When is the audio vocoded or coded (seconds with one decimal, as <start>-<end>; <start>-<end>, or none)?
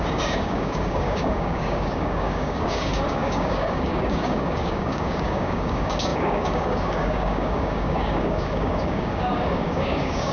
0.0-10.3